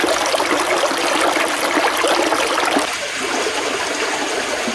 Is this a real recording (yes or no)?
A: yes